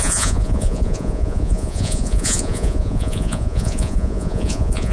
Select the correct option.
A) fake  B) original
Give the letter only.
A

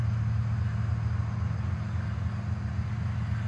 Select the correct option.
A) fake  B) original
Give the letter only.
B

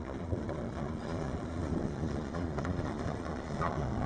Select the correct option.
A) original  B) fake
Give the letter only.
B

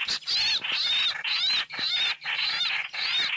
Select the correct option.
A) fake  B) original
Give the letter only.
B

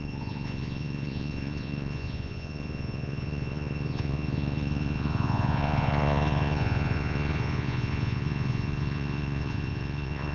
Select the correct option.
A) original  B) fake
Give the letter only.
B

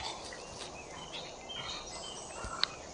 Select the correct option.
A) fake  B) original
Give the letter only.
B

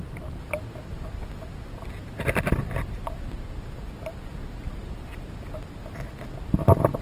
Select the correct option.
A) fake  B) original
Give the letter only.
B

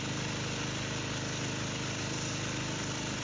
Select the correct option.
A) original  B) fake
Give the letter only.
A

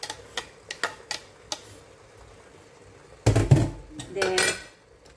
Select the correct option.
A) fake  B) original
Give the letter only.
B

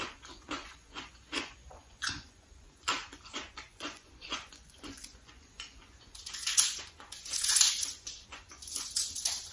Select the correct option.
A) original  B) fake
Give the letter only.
B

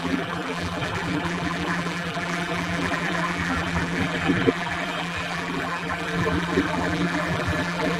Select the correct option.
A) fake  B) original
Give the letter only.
A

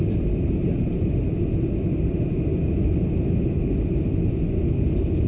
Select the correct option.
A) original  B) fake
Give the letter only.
A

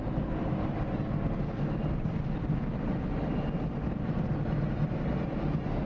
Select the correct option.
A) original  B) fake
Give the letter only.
A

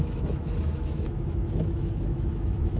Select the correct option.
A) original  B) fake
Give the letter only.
B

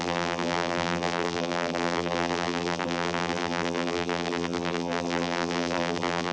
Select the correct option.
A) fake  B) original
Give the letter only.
A